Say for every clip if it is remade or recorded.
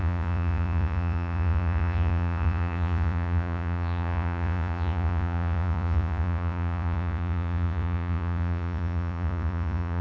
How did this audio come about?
remade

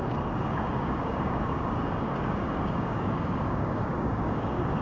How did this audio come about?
remade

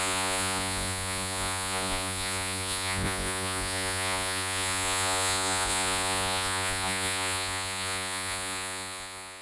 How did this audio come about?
remade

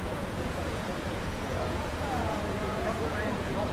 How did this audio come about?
remade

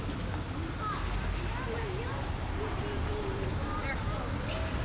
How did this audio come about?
recorded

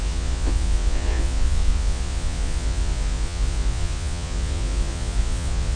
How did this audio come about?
remade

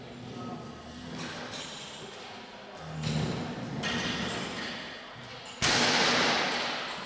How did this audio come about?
recorded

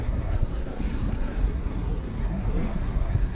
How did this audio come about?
remade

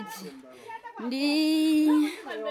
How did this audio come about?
recorded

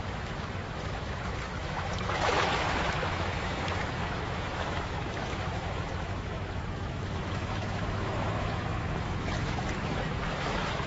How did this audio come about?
remade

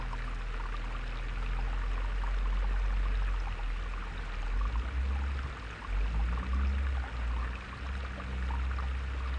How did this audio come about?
recorded